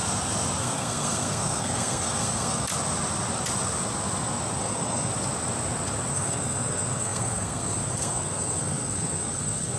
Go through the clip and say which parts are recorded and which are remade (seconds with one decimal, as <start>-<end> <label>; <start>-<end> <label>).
0.0-0.6 recorded; 0.6-2.7 remade; 2.7-4.6 recorded; 4.6-5.1 remade; 5.1-6.1 recorded; 6.1-9.8 remade